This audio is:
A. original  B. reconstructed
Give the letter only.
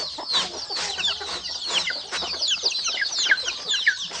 A